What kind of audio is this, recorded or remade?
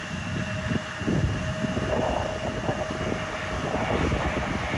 recorded